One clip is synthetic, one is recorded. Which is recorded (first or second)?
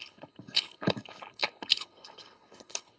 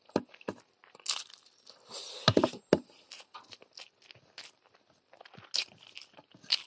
second